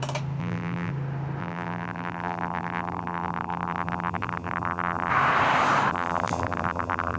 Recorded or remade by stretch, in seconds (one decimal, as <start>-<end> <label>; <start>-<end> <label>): 0.0-0.4 recorded; 0.4-0.9 remade; 0.9-1.4 recorded; 1.4-5.1 remade; 5.1-5.9 recorded; 5.9-7.2 remade